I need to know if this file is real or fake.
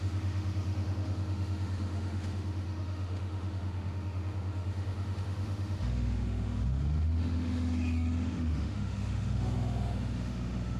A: fake